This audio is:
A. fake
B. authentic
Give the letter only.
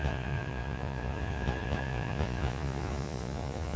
A